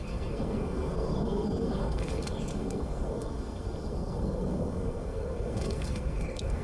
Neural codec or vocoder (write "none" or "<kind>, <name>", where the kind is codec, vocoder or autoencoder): codec, SNAC